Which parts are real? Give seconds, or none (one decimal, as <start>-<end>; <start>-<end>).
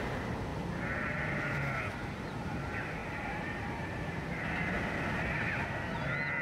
0.0-0.5; 1.8-3.0; 4.0-6.4